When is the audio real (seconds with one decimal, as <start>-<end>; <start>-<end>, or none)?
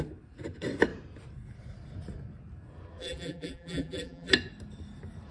0.0-3.0; 4.3-5.3